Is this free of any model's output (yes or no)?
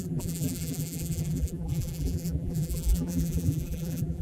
no